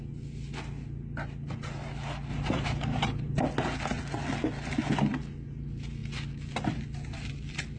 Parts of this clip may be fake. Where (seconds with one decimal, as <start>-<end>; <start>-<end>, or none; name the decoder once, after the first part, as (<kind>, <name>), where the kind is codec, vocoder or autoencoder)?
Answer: 2.3-3.4 (vocoder, BigVGAN v2)